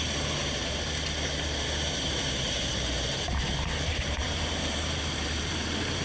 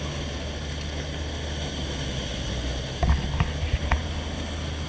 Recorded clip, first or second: second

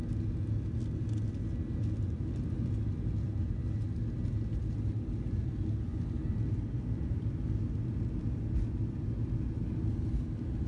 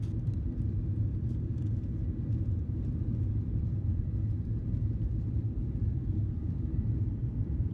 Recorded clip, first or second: first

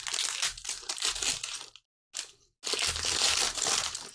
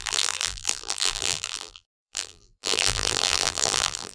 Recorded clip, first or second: first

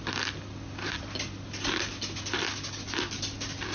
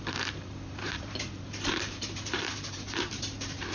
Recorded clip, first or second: first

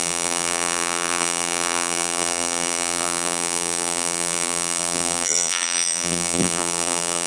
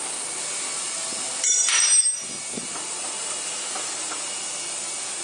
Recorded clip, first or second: second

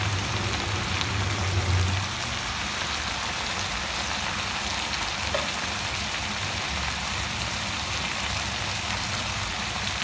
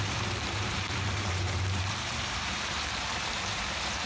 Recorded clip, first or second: first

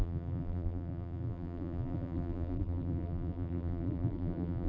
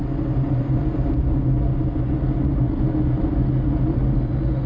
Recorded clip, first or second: second